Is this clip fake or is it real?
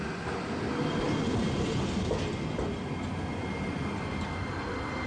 real